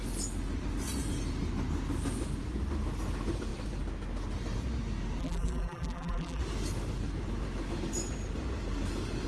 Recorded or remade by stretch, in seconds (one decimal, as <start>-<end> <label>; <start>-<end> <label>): 0.0-5.2 recorded; 5.2-6.4 remade; 6.4-9.3 recorded